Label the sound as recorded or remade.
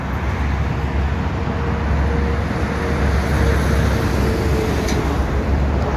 recorded